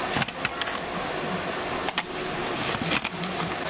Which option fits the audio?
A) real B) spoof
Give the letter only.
A